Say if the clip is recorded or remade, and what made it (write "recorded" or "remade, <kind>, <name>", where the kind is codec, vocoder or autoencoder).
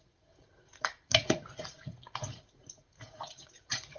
remade, vocoder, Vocos